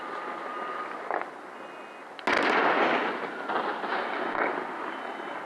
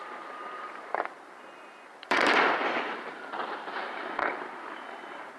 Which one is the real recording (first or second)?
first